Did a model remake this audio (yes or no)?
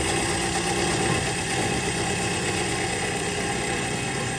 yes